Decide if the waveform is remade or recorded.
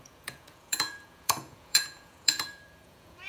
remade